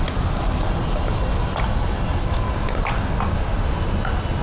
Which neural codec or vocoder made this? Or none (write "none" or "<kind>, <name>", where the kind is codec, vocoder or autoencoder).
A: none